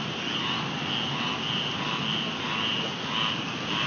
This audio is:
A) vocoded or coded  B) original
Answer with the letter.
B